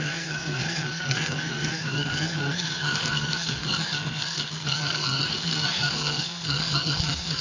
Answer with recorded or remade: remade